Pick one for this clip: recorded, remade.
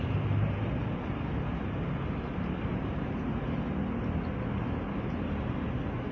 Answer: recorded